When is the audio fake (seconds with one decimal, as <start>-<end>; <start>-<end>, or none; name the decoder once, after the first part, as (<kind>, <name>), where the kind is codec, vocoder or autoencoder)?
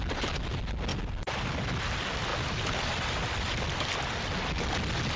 2.3-3.6 (vocoder, BigVGAN v2)